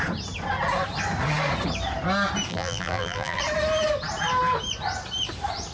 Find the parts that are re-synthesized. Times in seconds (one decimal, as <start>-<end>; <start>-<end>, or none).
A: 2.5-3.4